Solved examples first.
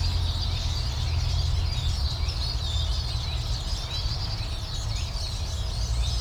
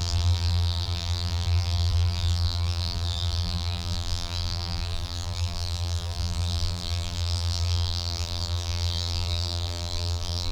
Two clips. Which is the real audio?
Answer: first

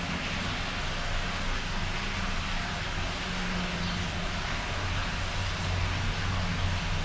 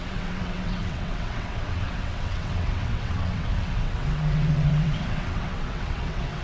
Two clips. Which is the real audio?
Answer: first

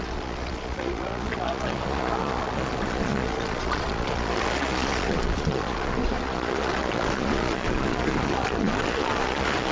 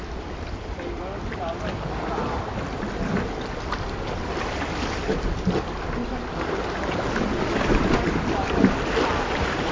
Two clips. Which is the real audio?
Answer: second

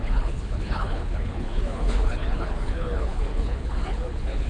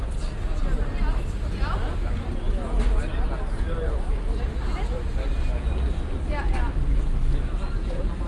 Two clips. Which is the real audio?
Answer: second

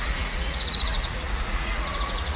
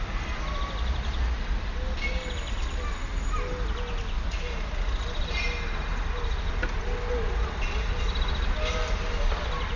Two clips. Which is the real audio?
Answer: second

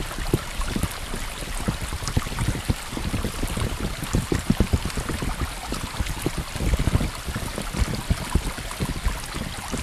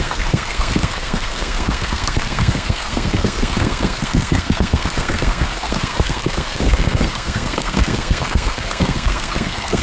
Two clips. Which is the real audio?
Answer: first